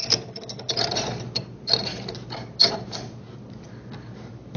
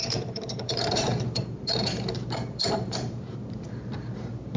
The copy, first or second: second